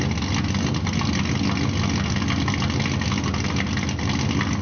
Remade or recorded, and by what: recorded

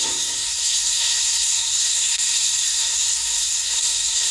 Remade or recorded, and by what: remade, codec, SNAC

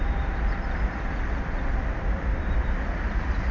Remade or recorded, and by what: recorded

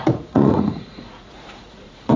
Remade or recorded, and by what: remade, vocoder, Vocos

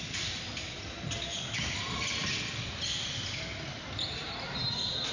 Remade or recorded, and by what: recorded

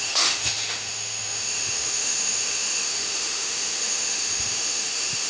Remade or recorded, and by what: remade, autoencoder, DAC-VAE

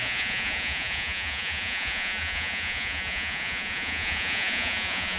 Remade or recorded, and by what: remade, vocoder, Vocos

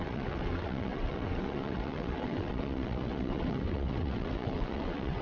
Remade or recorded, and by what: remade, vocoder, WaveNeXt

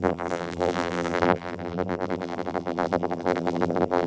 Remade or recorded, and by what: remade, vocoder, BigVGAN v2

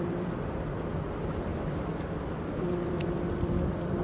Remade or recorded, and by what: remade, vocoder, BigVGAN v2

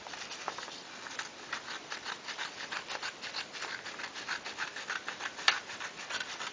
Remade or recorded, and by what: recorded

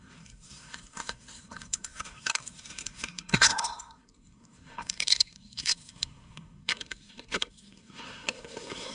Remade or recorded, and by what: remade, codec, SNAC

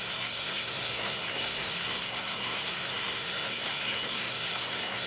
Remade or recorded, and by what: remade, codec, SNAC